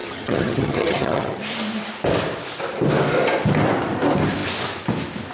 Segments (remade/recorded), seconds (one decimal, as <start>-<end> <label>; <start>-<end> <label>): 0.0-1.4 remade; 1.4-5.3 recorded